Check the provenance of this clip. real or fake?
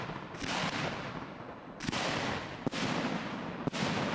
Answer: real